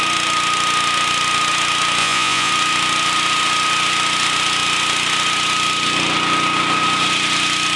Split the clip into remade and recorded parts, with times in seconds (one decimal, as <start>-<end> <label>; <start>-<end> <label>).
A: 0.0-2.0 recorded; 2.0-2.5 remade; 2.5-7.8 recorded